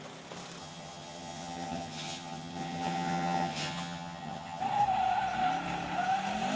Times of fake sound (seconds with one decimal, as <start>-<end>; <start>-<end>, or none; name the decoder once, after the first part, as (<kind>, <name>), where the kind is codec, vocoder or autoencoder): 0.6-4.6 (vocoder, HiFi-GAN)